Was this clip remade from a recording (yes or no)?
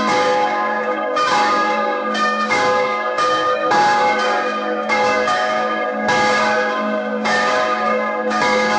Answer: yes